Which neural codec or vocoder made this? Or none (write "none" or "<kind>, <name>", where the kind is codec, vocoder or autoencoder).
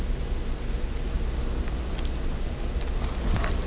none